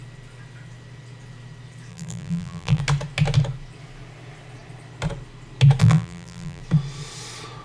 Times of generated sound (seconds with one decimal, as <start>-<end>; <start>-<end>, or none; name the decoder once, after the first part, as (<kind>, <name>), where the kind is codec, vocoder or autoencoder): 1.9-2.8 (vocoder, BigVGAN v2); 5.8-6.6